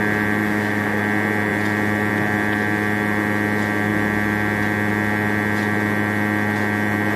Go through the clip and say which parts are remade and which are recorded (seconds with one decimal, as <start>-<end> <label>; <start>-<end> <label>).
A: 0.0-0.4 recorded; 0.4-1.0 remade; 1.0-7.2 recorded